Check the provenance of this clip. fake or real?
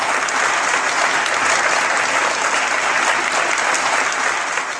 real